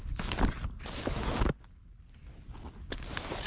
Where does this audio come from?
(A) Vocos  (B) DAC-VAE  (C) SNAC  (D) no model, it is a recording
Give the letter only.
D